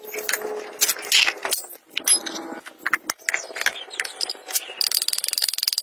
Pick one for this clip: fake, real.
real